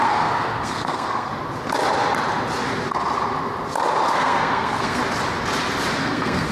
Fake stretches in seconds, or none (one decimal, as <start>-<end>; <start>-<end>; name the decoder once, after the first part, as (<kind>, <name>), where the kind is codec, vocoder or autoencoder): 0.0-1.3 (codec, SNAC); 4.0-5.0; 6.0-6.5